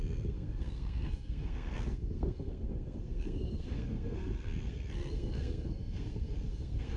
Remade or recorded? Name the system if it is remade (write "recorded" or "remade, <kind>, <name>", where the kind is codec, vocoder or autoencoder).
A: remade, codec, SNAC